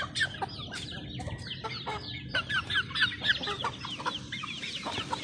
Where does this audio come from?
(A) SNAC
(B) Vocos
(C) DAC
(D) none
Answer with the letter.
D